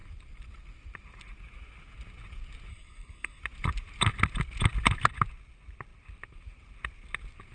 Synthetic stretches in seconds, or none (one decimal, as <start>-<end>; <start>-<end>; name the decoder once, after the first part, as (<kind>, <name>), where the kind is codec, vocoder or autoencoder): 2.7-3.4 (codec, SNAC)